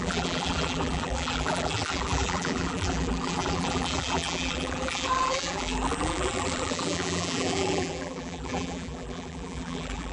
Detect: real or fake fake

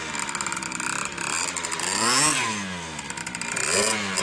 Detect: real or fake real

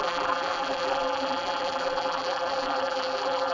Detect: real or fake fake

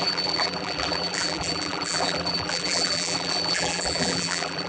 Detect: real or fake fake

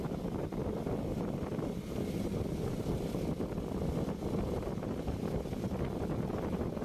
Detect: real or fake real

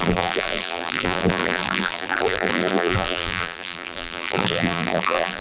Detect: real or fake fake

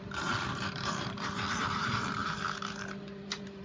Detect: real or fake fake